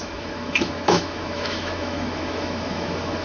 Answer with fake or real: fake